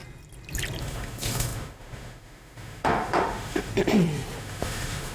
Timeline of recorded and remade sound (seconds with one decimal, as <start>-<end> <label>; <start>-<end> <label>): 0.0-0.8 recorded; 0.8-3.7 remade; 3.7-4.4 recorded; 4.4-5.1 remade